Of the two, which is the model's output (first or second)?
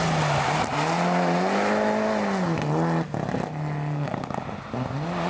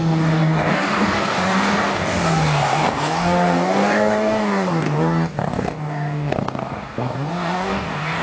second